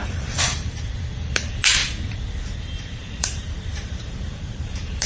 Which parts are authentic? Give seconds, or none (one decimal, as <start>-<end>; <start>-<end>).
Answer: 1.8-2.8